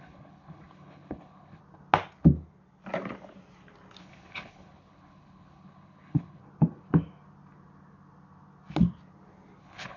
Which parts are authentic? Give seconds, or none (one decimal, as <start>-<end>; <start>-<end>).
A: 1.6-4.0; 6.4-9.6